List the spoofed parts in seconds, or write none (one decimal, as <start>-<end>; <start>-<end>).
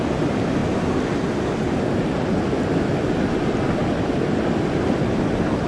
3.8-4.7